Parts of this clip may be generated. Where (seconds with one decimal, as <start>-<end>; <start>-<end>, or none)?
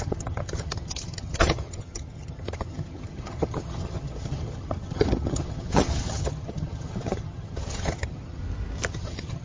0.0-8.4; 8.9-9.4